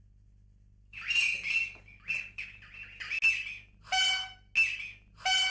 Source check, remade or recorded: recorded